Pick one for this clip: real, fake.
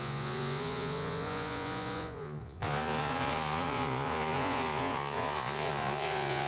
fake